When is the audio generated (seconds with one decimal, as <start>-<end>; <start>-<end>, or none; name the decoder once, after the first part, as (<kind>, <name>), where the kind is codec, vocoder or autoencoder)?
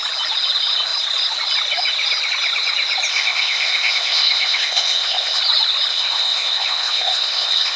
3.1-5.4 (codec, ZipCodec); 5.9-7.8